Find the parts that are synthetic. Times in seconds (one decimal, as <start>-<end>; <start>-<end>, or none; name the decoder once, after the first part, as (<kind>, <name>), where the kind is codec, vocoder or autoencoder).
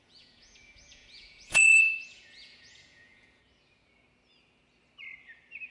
0.0-3.4 (vocoder, Vocos)